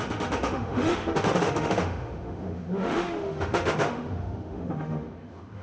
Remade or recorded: remade